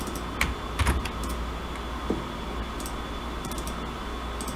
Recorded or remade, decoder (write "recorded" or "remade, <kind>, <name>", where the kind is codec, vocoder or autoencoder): recorded